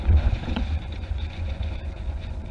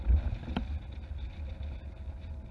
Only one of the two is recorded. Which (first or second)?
second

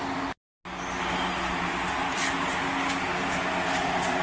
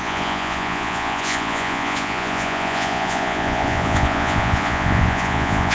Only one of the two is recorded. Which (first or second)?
first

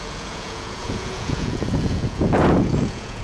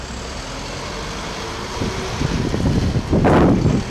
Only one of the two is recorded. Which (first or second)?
second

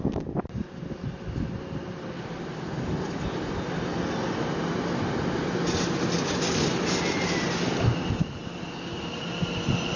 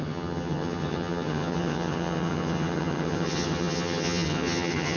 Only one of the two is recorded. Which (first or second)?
first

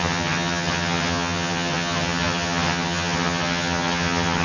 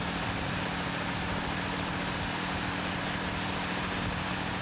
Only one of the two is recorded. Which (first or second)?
second